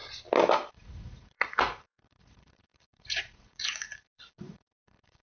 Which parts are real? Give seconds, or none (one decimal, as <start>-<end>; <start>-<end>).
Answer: 0.0-0.7